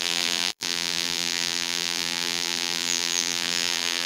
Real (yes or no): no